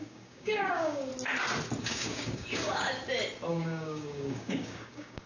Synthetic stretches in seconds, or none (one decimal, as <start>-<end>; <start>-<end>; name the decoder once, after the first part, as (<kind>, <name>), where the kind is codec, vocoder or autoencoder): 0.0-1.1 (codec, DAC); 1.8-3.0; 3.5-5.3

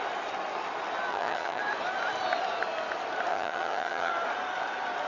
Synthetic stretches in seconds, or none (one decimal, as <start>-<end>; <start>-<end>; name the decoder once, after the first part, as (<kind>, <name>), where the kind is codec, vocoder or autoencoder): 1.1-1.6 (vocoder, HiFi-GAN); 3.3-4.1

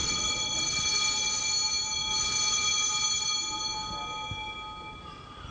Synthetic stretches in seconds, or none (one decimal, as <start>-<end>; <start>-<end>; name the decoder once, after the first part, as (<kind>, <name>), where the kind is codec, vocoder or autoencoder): 0.0-0.6 (vocoder, WaveNeXt)

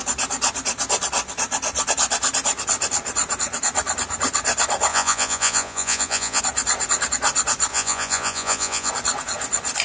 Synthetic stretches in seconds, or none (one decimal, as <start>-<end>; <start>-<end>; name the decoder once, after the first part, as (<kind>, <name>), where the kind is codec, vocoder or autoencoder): 4.9-6.4 (vocoder, Vocos); 7.7-8.9

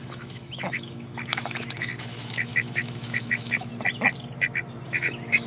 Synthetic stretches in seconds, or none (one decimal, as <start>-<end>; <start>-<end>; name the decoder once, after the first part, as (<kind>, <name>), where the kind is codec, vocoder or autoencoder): 0.0-3.7 (autoencoder, DAC-VAE); 4.9-5.5

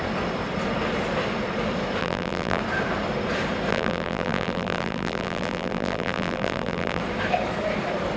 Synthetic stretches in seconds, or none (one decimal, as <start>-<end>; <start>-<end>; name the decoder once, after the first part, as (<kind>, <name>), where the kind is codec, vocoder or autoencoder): 2.0-2.6 (vocoder, BigVGAN v2); 3.7-7.0

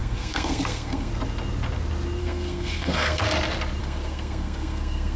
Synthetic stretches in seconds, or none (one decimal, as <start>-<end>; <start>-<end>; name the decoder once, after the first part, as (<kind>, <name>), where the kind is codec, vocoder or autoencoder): 0.0-1.1 (codec, SNAC); 2.2-3.2; 3.8-5.2